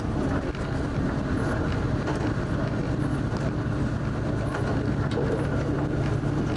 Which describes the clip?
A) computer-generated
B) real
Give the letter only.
B